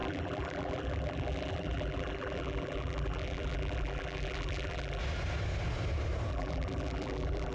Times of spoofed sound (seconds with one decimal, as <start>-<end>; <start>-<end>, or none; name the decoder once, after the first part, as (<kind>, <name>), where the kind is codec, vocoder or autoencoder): 0.0-5.0 (vocoder, BigVGAN v2); 6.3-7.5